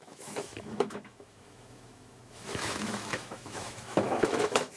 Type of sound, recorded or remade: remade